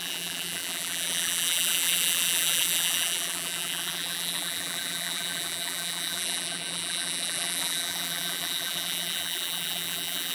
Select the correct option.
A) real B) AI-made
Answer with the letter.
B